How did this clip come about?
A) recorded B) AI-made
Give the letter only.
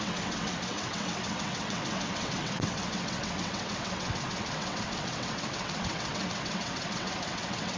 B